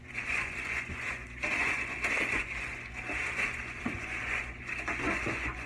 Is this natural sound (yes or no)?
no